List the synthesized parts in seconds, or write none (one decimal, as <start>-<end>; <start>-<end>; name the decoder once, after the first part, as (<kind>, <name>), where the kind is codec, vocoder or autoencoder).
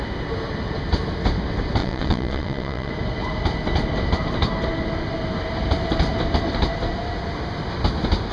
1.8-2.9 (vocoder, WaveNeXt)